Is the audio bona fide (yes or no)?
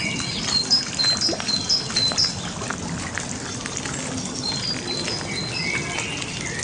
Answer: yes